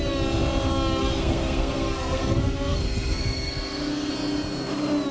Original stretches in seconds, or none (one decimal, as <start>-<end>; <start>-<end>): 0.0-1.0; 4.1-5.1